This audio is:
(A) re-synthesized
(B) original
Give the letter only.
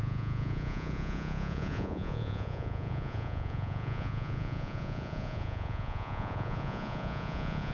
A